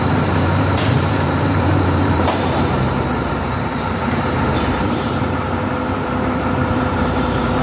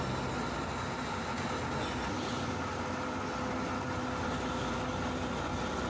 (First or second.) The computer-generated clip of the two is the first